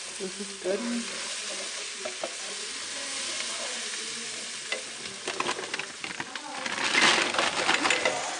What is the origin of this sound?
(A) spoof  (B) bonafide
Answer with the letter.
B